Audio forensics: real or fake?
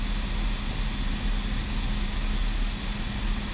real